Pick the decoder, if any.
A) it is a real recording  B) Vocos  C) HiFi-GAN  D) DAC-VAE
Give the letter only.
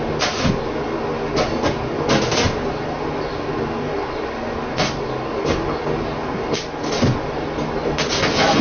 A